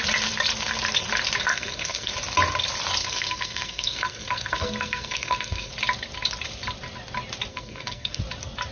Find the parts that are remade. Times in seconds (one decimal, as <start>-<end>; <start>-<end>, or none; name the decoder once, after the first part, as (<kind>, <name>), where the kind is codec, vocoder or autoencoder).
1.5-2.1 (codec, SNAC); 3.0-5.7; 7.5-8.2